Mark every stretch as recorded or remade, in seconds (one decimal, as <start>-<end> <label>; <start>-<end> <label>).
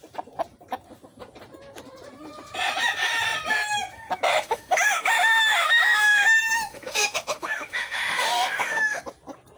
0.0-4.3 recorded; 4.3-9.0 remade; 9.0-9.6 recorded